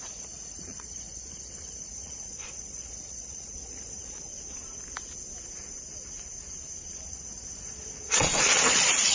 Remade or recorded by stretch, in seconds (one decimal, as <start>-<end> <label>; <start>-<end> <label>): 0.0-4.3 remade; 4.3-7.1 recorded; 7.1-9.1 remade